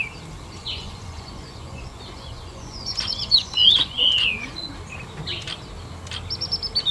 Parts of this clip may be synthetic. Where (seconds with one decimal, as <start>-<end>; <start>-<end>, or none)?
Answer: 0.6-4.7